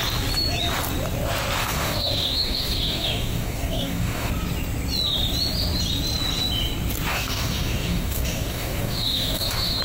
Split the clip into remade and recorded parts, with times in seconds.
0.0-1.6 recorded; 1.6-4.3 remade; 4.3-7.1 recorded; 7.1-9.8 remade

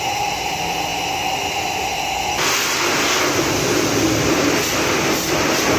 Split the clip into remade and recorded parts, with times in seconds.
0.0-5.8 recorded

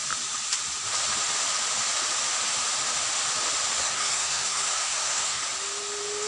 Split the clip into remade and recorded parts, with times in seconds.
0.0-3.8 recorded; 3.8-5.4 remade; 5.4-6.3 recorded